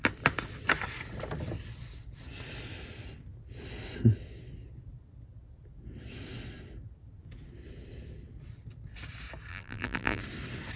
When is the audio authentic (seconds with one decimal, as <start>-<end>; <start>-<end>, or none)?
0.0-9.5; 10.2-10.8